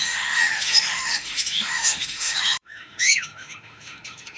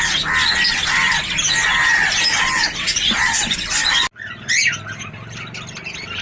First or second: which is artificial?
first